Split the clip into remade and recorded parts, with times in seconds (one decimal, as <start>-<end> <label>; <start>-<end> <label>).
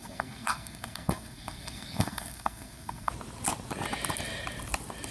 0.0-3.1 remade; 3.1-5.1 recorded